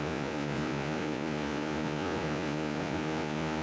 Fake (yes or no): yes